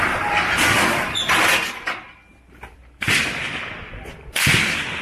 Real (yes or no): no